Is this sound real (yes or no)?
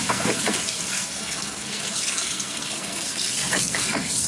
no